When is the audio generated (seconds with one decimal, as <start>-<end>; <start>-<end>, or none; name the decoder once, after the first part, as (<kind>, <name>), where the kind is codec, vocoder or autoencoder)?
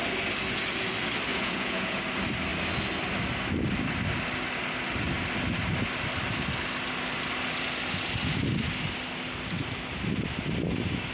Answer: 1.3-2.0 (vocoder, Vocos)